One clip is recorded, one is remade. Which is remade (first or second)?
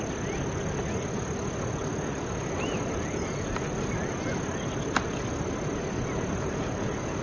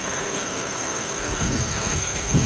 second